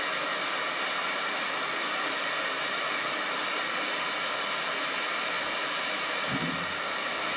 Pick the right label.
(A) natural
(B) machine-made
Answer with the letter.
A